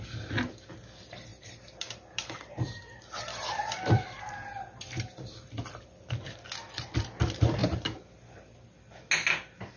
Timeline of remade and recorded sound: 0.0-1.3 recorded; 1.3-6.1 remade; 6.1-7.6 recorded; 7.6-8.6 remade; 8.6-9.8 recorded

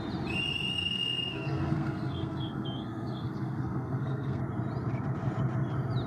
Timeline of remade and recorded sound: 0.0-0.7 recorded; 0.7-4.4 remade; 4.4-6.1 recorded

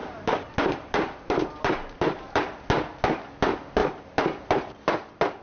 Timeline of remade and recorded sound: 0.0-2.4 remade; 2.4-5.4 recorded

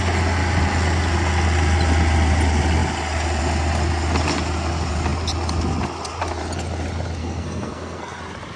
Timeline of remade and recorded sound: 0.0-7.2 recorded; 7.2-8.2 remade; 8.2-8.6 recorded